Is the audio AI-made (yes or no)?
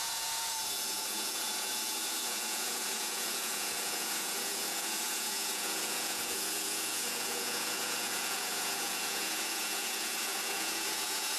yes